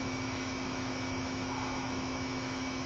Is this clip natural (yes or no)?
no